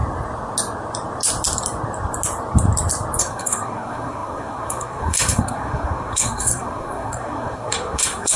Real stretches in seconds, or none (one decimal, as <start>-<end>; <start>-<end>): 0.0-3.2